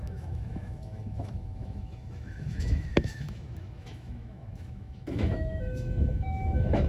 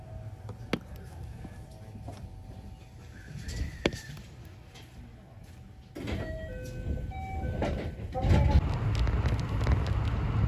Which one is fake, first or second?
first